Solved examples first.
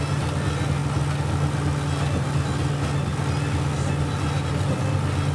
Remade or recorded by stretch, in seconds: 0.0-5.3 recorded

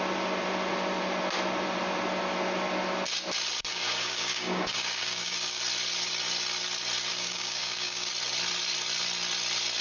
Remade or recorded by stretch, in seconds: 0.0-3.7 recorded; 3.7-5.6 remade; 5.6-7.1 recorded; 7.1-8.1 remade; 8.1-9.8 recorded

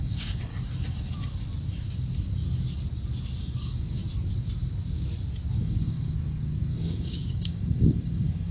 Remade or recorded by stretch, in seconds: 0.0-0.5 remade; 0.5-3.4 recorded; 3.4-4.0 remade; 4.0-5.5 recorded; 5.5-8.5 remade